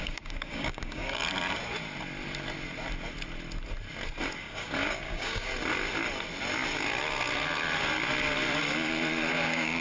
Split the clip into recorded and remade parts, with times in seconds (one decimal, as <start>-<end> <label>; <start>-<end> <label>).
0.0-1.2 remade; 1.2-4.4 recorded; 4.4-5.5 remade; 5.5-9.3 recorded; 9.3-9.8 remade